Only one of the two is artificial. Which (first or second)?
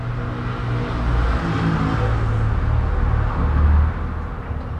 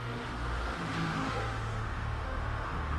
second